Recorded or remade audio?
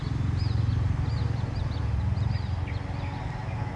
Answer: recorded